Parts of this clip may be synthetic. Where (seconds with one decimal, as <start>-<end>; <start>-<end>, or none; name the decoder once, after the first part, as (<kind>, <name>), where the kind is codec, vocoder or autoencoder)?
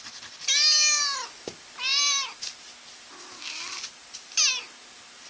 none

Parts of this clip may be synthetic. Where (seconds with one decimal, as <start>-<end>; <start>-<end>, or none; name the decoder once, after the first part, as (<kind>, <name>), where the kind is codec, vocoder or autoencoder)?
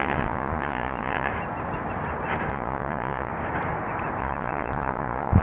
0.0-1.3 (vocoder, Vocos); 2.5-3.3; 4.2-5.4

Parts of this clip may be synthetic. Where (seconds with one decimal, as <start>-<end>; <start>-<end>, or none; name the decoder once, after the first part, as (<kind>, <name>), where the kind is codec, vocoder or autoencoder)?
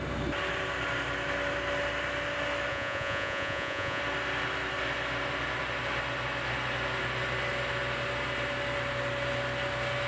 2.7-4.0 (vocoder, Vocos)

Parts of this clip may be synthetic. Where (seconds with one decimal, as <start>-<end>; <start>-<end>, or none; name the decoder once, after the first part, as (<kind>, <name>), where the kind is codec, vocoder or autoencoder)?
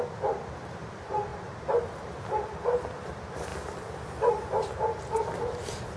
none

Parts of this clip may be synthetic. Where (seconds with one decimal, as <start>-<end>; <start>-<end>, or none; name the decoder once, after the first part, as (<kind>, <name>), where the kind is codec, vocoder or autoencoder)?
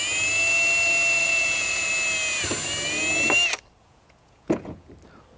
1.2-1.9 (vocoder, Vocos); 3.8-4.9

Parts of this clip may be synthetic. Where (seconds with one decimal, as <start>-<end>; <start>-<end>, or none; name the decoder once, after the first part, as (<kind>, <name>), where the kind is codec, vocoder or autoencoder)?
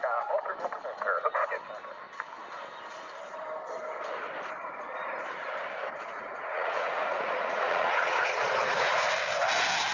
6.1-9.1 (vocoder, Vocos)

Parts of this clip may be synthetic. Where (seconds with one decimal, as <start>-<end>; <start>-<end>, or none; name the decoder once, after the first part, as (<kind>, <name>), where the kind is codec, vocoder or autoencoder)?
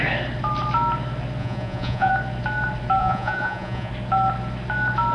1.4-2.1 (vocoder, Vocos); 3.0-3.9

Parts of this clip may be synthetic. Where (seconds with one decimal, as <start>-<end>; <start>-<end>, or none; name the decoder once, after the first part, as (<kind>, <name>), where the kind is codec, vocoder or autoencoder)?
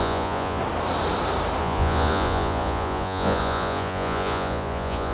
0.0-0.6 (vocoder, Vocos); 1.6-5.1